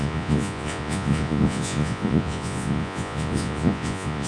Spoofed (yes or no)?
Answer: yes